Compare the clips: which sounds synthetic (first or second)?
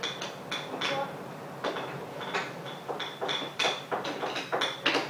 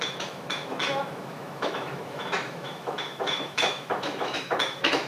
second